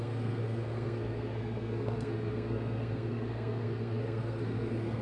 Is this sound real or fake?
fake